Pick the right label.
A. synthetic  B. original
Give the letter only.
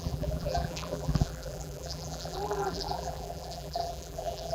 A